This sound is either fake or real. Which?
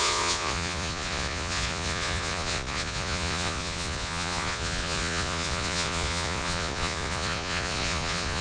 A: fake